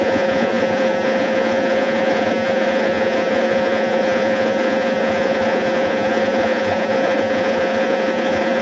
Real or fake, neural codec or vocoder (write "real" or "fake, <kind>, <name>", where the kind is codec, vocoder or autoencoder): fake, vocoder, Vocos